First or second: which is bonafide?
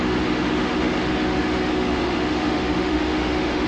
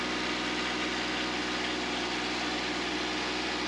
second